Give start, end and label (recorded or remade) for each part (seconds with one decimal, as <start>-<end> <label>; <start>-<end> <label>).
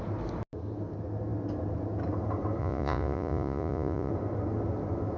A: 0.0-2.6 recorded; 2.6-4.1 remade; 4.1-5.2 recorded